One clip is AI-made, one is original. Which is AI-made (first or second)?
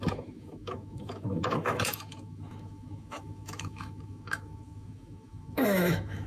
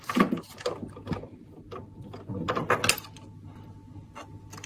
first